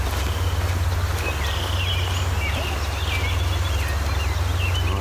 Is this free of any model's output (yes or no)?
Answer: yes